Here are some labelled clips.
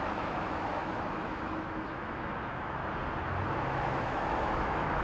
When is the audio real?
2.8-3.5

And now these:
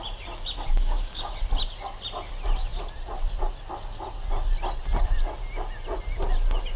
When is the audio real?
0.0-0.7; 1.3-6.8

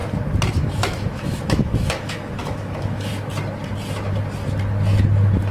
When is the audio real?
0.0-0.5; 3.1-5.5

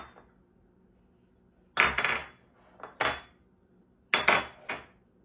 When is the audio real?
0.0-5.2

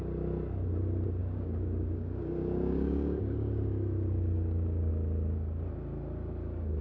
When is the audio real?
0.0-1.2; 4.9-6.8

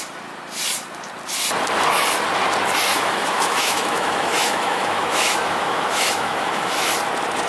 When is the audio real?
0.0-2.9; 6.9-7.5